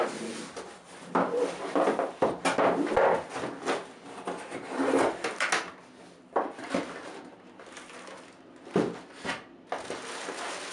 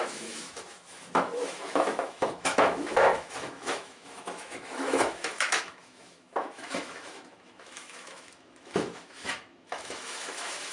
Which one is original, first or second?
first